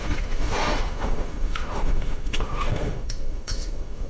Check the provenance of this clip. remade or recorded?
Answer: remade